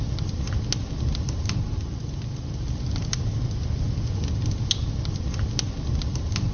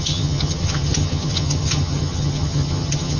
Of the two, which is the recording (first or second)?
first